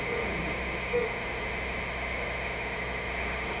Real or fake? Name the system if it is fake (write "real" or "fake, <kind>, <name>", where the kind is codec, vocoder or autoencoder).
fake, autoencoder, DAC-VAE